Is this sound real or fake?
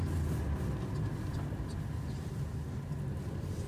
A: real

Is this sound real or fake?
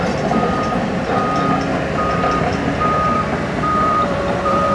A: fake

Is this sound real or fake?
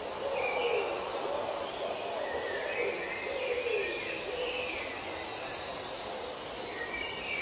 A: fake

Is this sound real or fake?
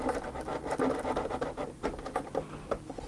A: real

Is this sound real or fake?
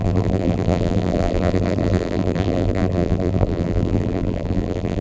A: fake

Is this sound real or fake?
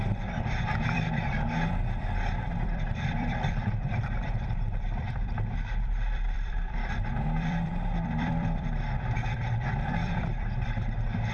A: fake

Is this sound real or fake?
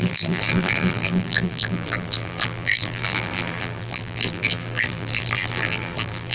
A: fake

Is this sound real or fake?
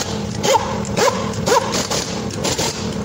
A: real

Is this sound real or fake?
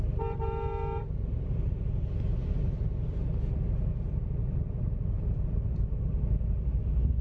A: fake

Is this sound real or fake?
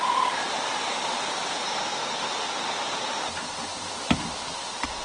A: fake